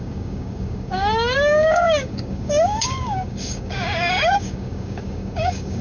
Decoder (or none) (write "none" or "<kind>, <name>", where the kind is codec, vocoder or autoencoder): codec, DAC